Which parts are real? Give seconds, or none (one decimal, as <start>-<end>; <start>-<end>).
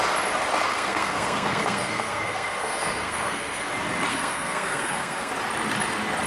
0.0-0.7; 3.6-4.1; 5.3-6.3